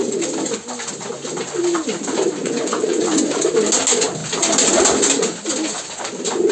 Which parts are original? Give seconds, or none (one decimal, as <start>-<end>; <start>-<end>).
0.0-2.4; 3.4-6.5